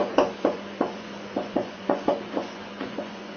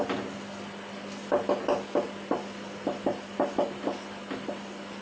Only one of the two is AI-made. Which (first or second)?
first